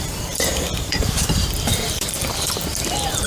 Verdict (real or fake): fake